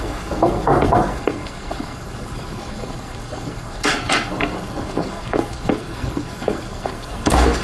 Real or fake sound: fake